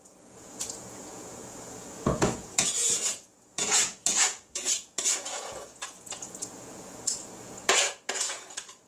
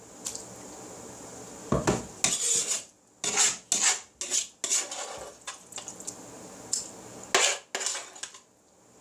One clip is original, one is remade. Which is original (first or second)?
second